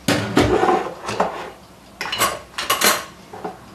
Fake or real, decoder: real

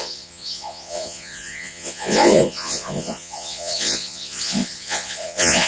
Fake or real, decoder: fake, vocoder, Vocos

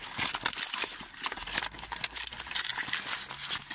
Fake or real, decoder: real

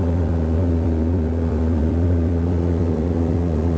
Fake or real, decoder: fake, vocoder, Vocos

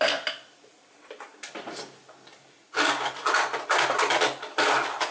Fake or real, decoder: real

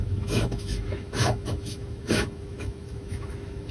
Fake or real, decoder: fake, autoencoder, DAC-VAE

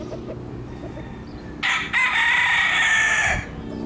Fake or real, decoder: real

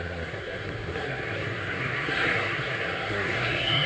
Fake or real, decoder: fake, codec, SNAC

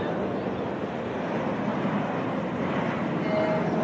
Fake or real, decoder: real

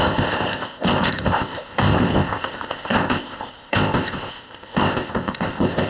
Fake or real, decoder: fake, codec, ZipCodec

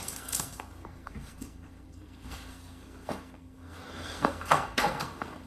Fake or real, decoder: fake, codec, SNAC